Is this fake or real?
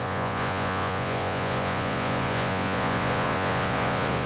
fake